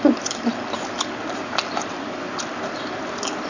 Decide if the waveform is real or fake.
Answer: real